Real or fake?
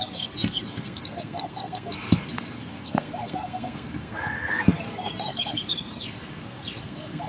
fake